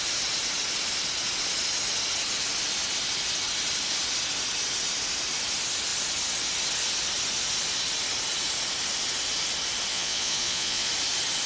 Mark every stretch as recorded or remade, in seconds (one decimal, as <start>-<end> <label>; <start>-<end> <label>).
0.0-9.9 recorded; 9.9-10.9 remade; 10.9-11.5 recorded